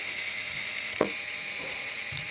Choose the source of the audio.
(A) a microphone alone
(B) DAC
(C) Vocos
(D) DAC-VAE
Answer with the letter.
C